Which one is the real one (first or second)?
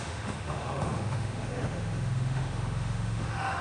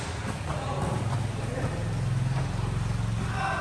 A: second